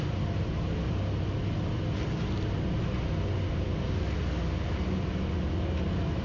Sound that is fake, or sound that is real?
real